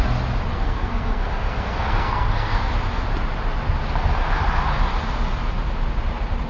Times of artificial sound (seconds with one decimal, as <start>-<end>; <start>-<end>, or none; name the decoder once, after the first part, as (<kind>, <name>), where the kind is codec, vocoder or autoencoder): 0.5-2.7 (codec, SNAC)

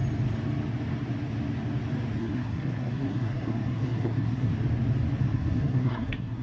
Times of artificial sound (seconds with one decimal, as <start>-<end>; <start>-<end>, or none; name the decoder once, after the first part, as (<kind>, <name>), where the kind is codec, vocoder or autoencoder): 2.2-4.5 (codec, SNAC); 5.2-6.4

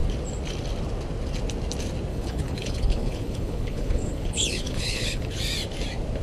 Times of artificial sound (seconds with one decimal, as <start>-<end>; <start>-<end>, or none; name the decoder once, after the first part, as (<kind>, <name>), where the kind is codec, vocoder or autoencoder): 2.1-5.4 (codec, HILCodec)